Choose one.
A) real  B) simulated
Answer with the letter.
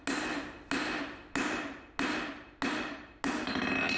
A